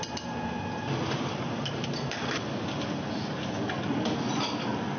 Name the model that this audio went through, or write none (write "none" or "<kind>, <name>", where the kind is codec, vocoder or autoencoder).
none